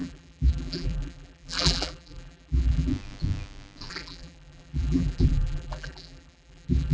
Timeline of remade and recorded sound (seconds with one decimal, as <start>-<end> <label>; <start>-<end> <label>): 0.0-2.9 remade; 2.9-3.9 recorded; 3.9-6.9 remade